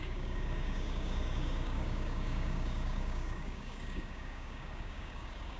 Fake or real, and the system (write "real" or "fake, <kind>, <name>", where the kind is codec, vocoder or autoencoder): fake, codec, DAC